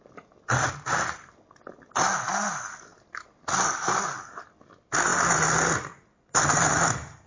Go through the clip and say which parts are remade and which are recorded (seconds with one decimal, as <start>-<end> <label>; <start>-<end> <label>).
0.0-7.3 recorded